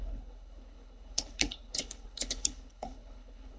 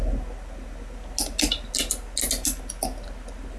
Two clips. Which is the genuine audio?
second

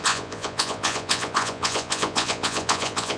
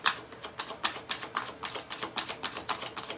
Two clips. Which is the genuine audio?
second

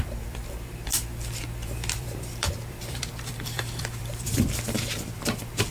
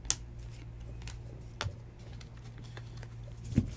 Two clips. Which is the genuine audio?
second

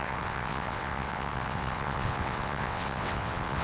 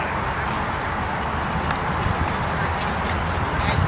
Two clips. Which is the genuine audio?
second